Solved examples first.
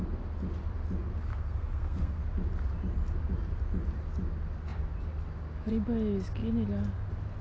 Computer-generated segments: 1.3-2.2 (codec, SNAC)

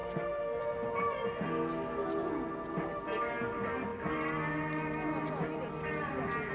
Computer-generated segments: 0.0-0.6 (codec, SNAC)

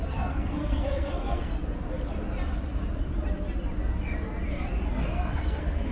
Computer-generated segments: 0.0-1.5 (codec, SNAC); 5.0-5.9

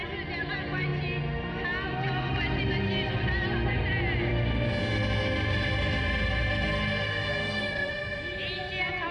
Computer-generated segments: 7.4-7.9 (codec, SNAC)